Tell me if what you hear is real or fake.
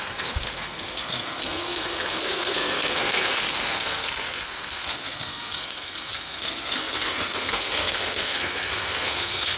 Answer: fake